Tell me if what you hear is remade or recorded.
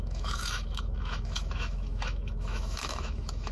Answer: remade